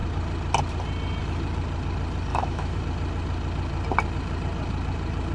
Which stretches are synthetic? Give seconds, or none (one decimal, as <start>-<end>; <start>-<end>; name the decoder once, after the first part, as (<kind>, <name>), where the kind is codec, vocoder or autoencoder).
2.3-2.8 (autoencoder, DAC-VAE)